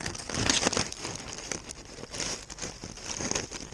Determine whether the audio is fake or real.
real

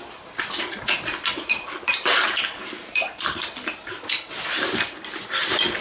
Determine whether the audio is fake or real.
fake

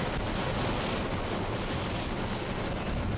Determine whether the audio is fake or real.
real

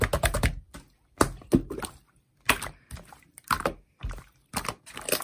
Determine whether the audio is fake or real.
real